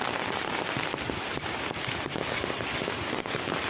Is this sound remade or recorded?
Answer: recorded